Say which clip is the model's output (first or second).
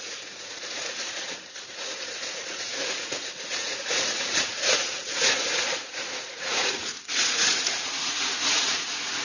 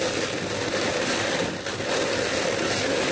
first